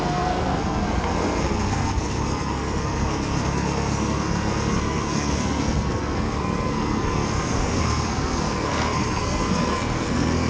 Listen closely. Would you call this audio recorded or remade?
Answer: remade